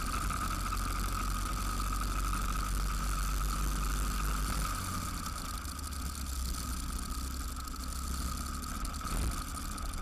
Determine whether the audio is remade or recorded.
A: recorded